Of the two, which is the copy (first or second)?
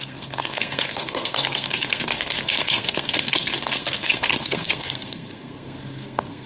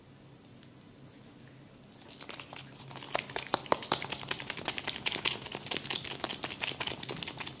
first